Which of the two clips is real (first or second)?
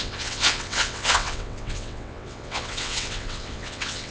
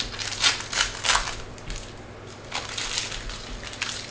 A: second